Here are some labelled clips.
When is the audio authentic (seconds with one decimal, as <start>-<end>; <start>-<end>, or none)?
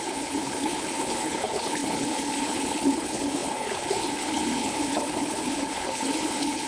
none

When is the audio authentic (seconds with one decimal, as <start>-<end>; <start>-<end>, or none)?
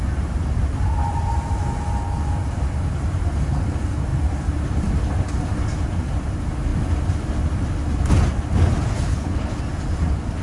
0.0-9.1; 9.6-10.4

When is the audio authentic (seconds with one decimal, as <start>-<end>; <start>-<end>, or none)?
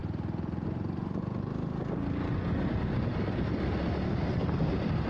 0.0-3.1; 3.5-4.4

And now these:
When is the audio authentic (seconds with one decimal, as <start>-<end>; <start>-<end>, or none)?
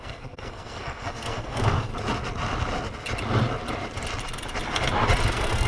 1.9-5.3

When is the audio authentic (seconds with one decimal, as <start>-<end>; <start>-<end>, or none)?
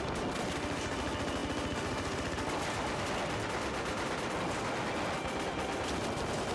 0.0-6.5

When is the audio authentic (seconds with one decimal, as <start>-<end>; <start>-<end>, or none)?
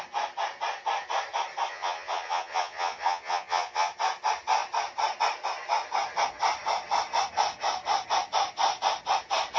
0.0-1.7; 3.9-9.6